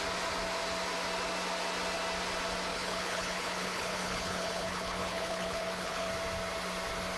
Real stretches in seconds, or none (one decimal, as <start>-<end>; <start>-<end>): 0.0-2.7; 6.1-7.2